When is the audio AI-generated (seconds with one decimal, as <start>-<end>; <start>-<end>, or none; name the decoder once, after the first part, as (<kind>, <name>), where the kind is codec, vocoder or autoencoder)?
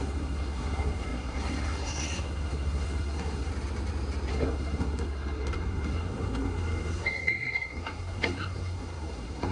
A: 0.0-3.5 (codec, SNAC); 4.3-9.5